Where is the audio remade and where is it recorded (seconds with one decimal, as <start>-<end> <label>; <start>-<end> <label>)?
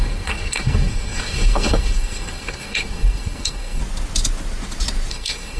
0.0-3.8 remade; 3.8-5.1 recorded; 5.1-5.6 remade